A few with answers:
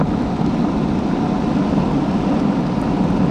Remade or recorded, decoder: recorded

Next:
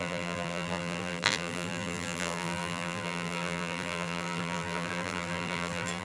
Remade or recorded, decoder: remade, vocoder, BigVGAN v2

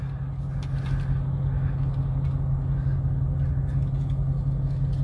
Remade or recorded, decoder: recorded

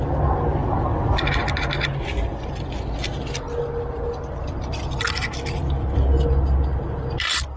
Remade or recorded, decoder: recorded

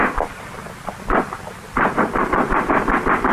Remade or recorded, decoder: remade, vocoder, BigVGAN v2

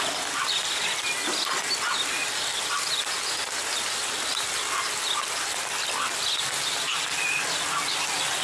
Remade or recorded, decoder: recorded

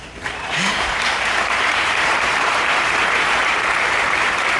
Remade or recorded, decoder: remade, vocoder, BigVGAN v2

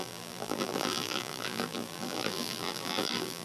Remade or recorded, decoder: remade, vocoder, BigVGAN v2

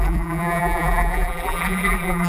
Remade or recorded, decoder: remade, vocoder, BigVGAN v2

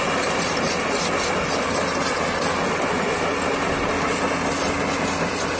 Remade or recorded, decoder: recorded